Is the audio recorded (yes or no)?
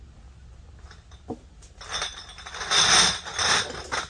yes